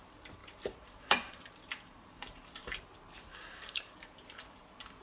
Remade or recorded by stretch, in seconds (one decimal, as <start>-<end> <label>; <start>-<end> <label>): 0.0-0.4 recorded; 0.4-2.8 remade; 2.8-3.3 recorded; 3.3-3.9 remade; 3.9-5.0 recorded